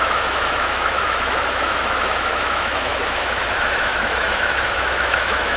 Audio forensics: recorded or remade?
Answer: remade